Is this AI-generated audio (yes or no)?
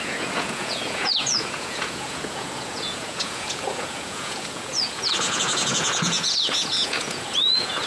yes